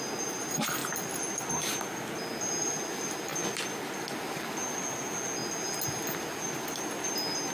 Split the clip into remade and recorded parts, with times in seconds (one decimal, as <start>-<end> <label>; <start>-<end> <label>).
0.0-7.5 recorded

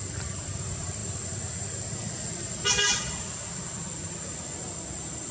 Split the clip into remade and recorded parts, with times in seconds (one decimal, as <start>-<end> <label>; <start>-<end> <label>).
0.0-5.3 recorded

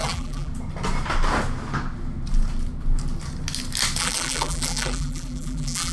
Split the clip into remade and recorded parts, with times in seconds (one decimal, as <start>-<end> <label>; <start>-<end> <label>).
0.0-0.5 remade; 0.5-4.0 recorded; 4.0-5.9 remade

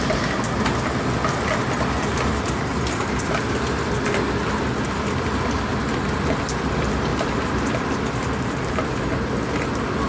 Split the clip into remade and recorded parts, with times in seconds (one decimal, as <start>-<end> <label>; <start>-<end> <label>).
0.0-7.1 recorded; 7.1-9.0 remade; 9.0-10.1 recorded